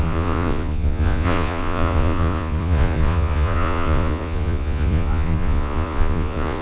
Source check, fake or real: fake